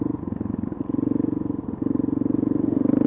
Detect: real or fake real